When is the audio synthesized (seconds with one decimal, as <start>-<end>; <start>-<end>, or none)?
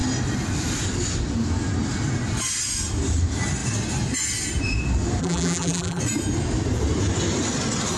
5.2-6.0